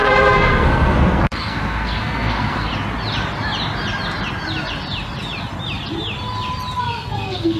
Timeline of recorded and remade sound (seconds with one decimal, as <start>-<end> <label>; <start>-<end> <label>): 0.0-2.7 remade; 2.7-6.8 recorded; 6.8-7.6 remade